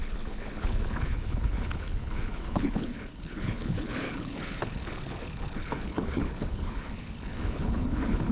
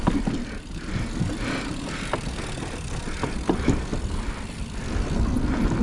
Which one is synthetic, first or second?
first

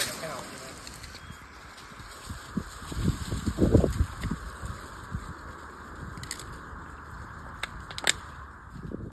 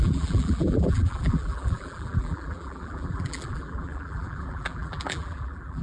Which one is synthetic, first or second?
second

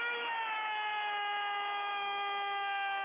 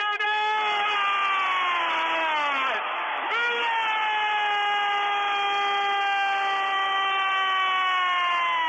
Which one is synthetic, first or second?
first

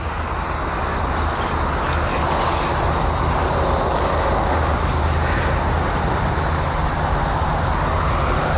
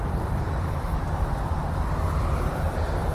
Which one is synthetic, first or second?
second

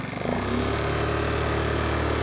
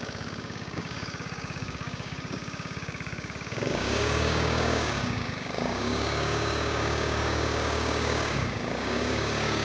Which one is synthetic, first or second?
second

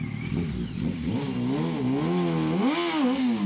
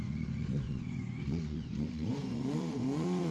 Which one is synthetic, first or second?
second